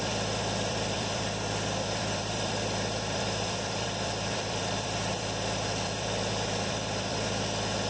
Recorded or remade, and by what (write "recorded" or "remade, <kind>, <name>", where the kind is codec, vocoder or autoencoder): remade, vocoder, BigVGAN v2